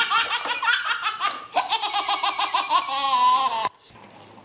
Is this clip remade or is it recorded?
recorded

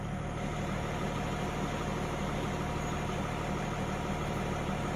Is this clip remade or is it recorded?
recorded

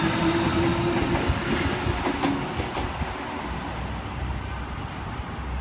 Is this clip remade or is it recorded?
recorded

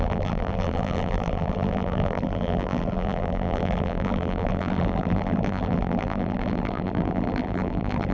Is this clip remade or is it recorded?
remade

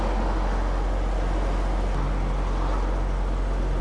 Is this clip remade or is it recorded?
recorded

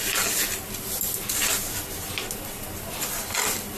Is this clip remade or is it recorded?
recorded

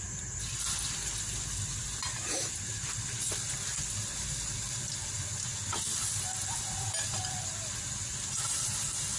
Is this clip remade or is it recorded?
recorded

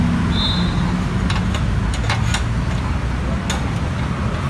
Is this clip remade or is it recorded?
recorded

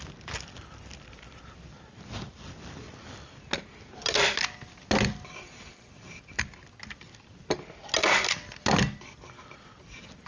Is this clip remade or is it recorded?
recorded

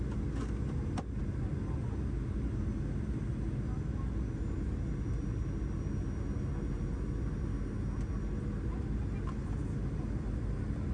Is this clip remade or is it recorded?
recorded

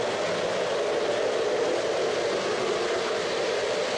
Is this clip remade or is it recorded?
recorded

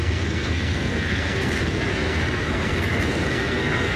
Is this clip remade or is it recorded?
remade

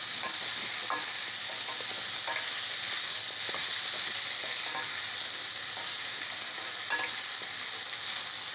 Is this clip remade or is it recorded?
recorded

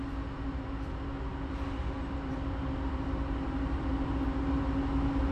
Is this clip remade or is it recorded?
recorded